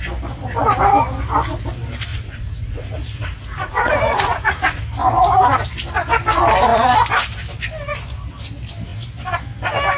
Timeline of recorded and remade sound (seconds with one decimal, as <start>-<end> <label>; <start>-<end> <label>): 0.0-2.1 recorded; 2.1-4.8 remade; 4.8-10.0 recorded